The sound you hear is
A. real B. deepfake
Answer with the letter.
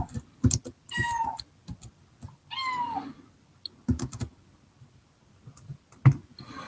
A